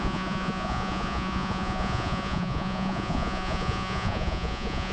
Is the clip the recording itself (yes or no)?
no